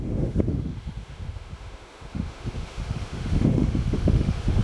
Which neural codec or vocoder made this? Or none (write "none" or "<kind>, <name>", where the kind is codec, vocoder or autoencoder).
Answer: autoencoder, DAC-VAE